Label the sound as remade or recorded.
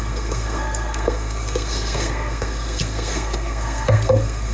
remade